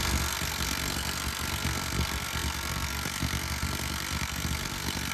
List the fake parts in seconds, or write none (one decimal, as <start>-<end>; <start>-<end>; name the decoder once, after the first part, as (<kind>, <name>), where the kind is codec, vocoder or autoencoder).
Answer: 0.0-5.1 (codec, SNAC)